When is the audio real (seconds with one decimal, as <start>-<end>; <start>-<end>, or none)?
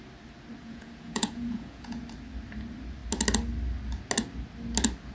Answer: 0.0-0.6; 2.0-5.1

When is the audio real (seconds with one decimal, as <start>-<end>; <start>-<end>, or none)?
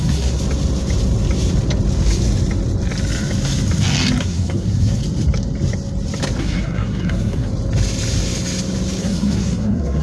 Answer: 0.4-4.2; 5.0-6.4; 7.5-9.0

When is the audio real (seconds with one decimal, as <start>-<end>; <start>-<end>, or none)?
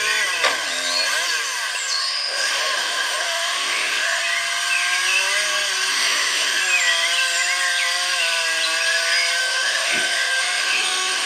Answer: 0.0-2.0; 4.2-5.9; 6.6-9.4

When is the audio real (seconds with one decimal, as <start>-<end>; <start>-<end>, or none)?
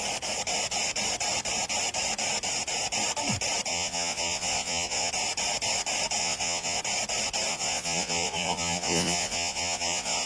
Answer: 0.0-3.7; 5.1-6.2; 6.8-7.5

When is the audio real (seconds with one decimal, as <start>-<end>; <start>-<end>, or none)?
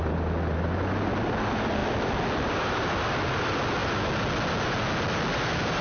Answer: 0.0-5.8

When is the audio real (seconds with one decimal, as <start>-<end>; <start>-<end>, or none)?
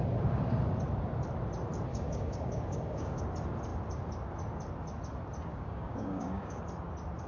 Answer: 0.0-1.9; 3.2-5.5; 6.6-7.3